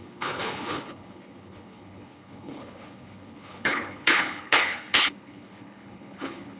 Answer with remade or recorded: remade